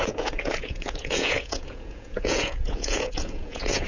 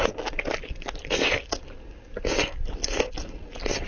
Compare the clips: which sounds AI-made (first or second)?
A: first